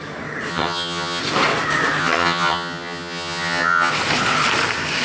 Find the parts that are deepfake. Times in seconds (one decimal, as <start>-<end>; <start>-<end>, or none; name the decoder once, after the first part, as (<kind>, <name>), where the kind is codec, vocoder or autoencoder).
0.5-1.2 (vocoder, HiFi-GAN); 2.0-3.9